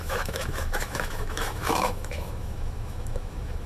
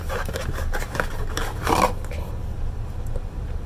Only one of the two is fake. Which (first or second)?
first